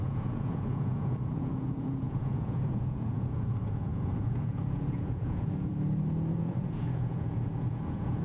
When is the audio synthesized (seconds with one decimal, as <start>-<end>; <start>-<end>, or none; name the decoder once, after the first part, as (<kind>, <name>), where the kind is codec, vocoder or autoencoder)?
0.0-5.7 (vocoder, Vocos); 6.3-8.2